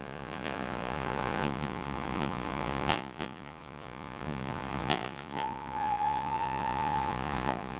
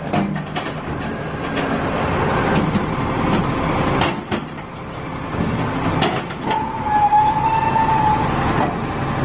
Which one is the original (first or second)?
second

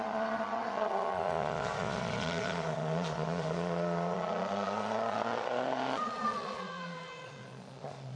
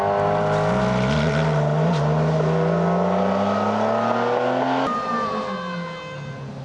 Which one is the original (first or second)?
second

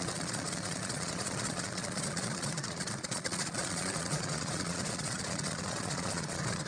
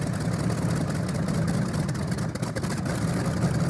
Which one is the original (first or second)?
second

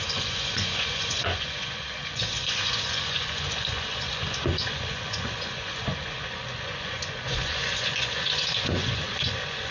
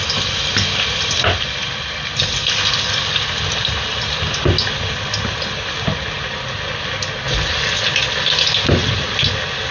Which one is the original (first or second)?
second